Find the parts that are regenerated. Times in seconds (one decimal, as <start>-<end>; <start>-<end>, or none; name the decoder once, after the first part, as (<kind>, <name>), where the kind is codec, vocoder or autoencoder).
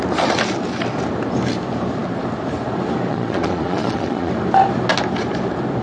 3.1-4.3 (vocoder, Vocos)